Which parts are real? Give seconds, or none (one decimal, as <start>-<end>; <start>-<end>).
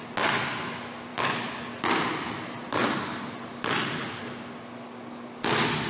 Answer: 0.0-5.9